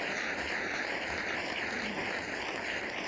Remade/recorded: remade